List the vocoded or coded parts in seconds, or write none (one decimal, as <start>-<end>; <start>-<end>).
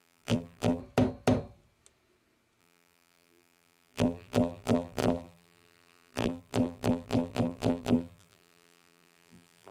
0.0-0.8; 2.6-9.7